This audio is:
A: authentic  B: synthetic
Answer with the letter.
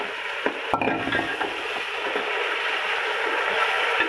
A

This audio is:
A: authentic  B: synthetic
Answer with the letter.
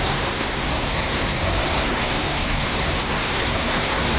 B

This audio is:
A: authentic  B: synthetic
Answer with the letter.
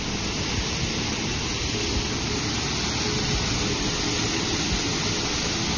A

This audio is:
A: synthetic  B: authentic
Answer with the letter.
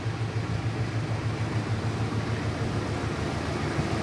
B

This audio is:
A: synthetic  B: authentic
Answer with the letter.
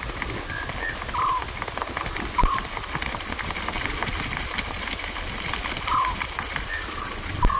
B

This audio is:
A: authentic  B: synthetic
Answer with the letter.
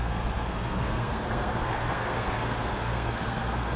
B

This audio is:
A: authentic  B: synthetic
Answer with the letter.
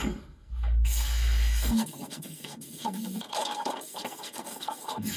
B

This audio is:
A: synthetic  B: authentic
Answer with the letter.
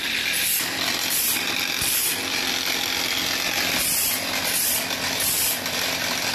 B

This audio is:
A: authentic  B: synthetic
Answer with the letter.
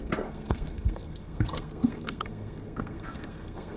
B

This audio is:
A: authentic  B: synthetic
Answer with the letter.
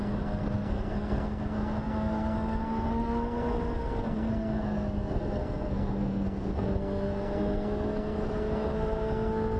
B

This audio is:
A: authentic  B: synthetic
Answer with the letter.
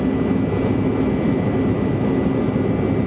A